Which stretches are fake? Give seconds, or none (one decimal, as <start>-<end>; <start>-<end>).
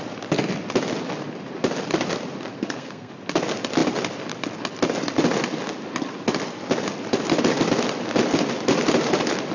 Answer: 2.5-3.1